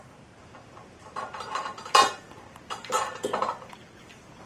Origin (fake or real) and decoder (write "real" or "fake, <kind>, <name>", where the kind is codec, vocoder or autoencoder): fake, vocoder, BigVGAN v2